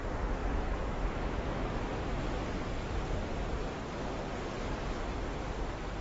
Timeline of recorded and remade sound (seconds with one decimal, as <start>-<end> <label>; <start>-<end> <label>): 0.0-0.4 recorded; 0.4-2.2 remade; 2.2-6.0 recorded